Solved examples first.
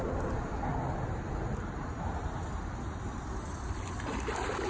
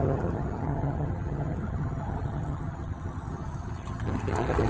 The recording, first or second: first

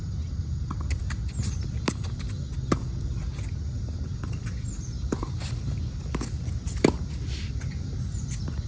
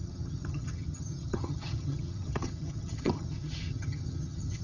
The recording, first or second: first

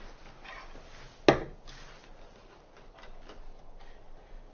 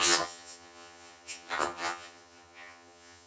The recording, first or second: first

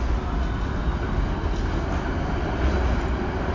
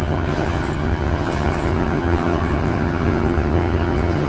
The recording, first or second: first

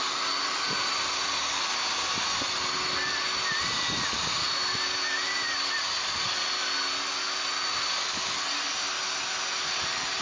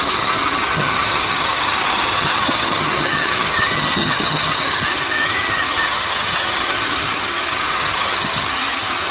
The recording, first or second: first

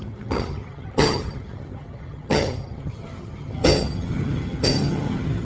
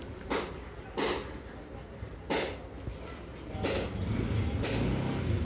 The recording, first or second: second